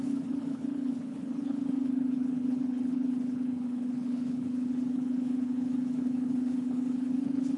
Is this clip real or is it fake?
fake